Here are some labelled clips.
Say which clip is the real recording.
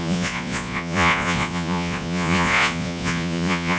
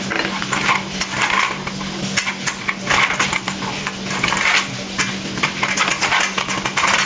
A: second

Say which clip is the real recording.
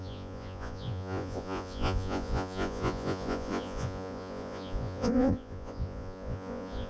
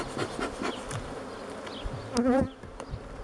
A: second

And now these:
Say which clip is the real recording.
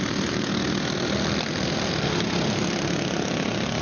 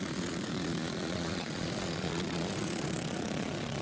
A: first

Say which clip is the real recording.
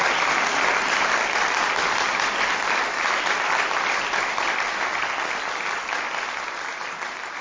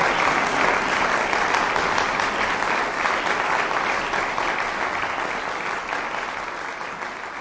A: second